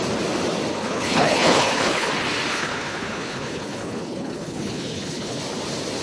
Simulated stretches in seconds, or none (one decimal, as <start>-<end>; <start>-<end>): 0.7-2.1; 2.5-5.4